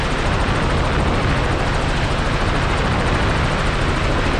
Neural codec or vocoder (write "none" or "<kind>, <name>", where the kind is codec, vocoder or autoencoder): none